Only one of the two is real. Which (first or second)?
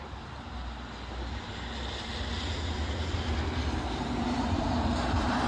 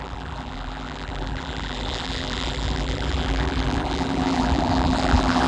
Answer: first